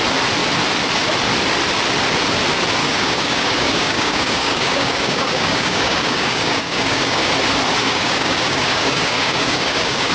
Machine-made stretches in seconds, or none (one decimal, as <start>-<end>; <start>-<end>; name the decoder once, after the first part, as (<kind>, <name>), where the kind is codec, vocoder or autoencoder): 2.8-7.2 (codec, DAC); 7.8-10.1

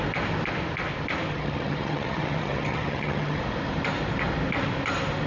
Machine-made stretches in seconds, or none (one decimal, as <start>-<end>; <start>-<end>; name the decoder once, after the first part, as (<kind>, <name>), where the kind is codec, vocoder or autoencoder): 1.3-3.4 (vocoder, HiFi-GAN)

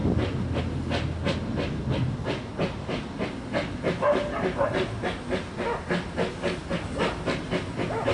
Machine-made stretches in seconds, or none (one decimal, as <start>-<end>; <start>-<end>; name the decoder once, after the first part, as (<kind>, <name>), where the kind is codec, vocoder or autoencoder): none

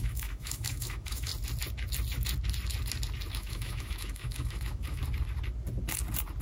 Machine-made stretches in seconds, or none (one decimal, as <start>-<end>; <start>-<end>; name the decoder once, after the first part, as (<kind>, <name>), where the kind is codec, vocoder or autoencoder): 0.0-1.3 (autoencoder, DAC-VAE); 3.3-5.0

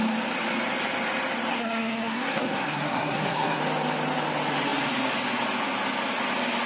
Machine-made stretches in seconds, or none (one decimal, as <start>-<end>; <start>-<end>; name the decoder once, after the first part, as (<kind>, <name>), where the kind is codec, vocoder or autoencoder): 1.5-3.6 (codec, SNAC)

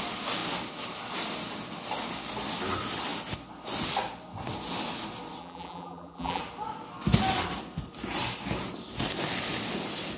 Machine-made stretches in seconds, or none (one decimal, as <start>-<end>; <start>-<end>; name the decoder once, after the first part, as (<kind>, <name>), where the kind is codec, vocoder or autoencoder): 5.4-6.4 (vocoder, BigVGAN v2)

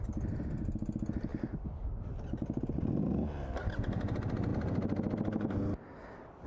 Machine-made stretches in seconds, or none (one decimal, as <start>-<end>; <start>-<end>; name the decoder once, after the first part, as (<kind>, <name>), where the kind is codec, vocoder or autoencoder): none